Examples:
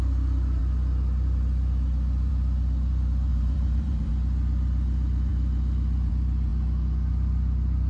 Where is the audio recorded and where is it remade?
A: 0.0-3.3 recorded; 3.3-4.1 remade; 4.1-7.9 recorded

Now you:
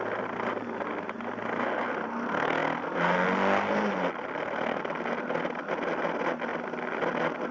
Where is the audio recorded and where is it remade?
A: 0.0-7.5 recorded